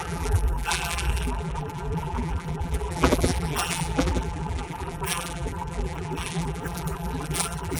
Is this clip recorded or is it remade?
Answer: remade